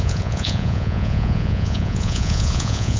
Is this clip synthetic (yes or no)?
yes